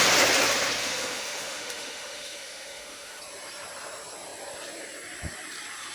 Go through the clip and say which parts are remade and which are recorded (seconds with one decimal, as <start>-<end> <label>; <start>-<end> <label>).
0.0-0.8 recorded; 0.8-3.2 remade; 3.2-5.9 recorded